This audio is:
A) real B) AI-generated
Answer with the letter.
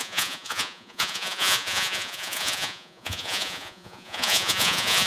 B